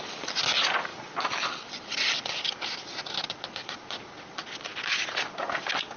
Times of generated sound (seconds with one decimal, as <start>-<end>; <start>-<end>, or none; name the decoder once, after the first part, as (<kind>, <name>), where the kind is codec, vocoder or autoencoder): none